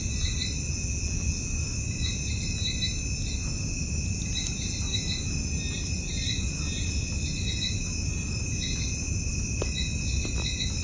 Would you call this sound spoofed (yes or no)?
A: no